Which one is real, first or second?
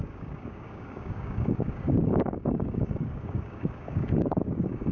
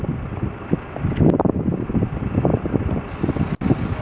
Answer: second